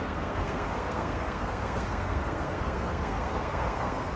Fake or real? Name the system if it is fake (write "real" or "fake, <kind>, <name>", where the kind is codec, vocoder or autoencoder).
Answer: fake, codec, SNAC